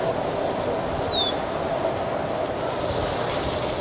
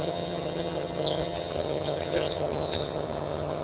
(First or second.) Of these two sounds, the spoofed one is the second